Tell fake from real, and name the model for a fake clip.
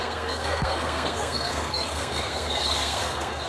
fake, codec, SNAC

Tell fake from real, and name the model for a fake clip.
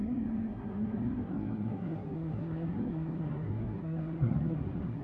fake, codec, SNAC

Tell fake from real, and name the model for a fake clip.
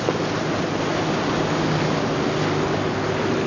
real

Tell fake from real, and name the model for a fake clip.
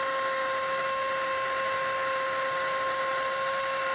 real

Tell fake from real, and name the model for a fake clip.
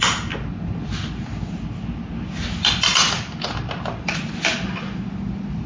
real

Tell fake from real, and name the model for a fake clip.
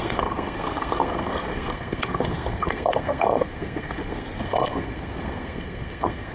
fake, codec, SNAC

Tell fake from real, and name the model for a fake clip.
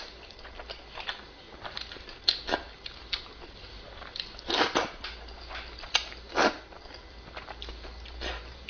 real